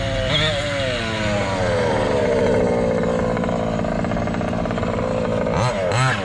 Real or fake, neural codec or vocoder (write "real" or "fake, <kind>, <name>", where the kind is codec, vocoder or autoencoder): real